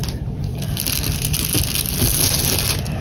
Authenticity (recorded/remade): recorded